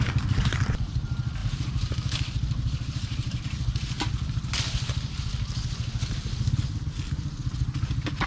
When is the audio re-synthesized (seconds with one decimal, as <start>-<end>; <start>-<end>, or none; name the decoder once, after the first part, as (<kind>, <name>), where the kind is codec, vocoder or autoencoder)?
1.4-3.4 (vocoder, BigVGAN v2)